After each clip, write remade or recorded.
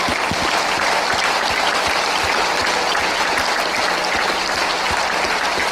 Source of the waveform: recorded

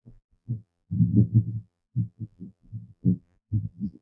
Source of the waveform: remade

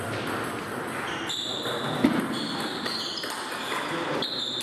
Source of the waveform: remade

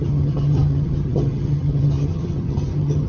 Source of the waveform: remade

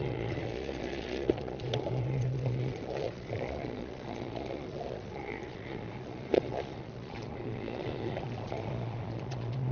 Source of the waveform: remade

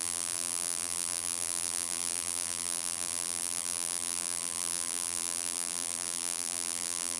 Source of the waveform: remade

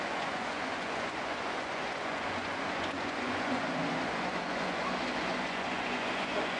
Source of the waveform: remade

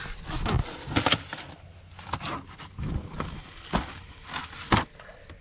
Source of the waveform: recorded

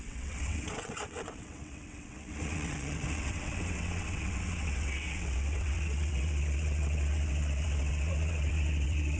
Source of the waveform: remade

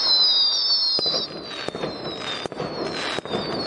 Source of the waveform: recorded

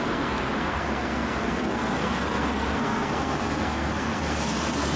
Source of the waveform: remade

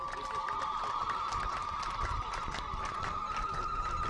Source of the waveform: recorded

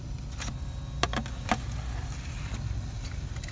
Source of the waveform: recorded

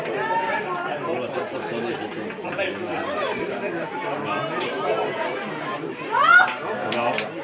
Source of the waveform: recorded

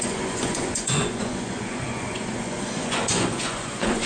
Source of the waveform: remade